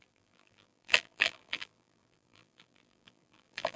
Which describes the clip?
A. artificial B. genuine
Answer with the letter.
A